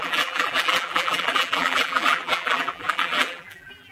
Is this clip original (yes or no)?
no